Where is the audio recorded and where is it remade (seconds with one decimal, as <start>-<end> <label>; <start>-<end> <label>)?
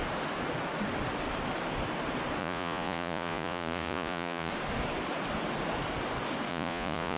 0.0-2.4 recorded; 2.4-4.5 remade; 4.5-6.5 recorded; 6.5-7.2 remade